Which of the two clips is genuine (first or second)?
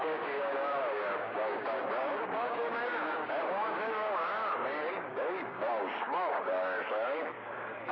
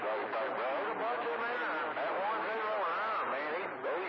second